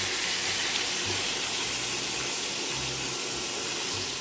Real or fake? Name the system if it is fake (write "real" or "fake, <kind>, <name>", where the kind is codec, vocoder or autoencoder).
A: real